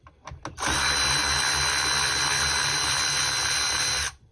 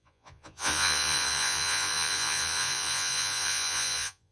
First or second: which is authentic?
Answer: first